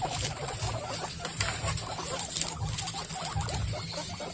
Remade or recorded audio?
recorded